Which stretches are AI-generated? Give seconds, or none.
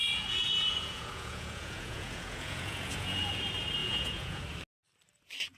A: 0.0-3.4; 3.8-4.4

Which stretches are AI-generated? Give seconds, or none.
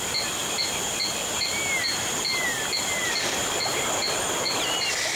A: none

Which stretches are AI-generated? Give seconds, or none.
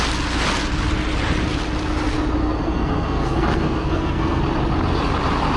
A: 2.4-4.4